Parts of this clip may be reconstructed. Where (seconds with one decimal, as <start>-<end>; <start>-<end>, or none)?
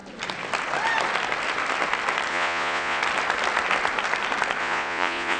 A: 2.3-3.0; 4.6-5.4